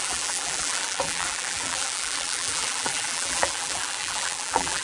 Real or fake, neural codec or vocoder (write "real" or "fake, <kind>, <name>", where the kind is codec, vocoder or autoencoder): fake, vocoder, BigVGAN v2